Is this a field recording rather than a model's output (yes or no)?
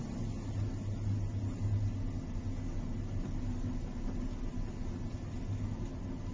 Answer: yes